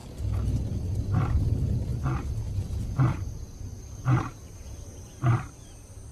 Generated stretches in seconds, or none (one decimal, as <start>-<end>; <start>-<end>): none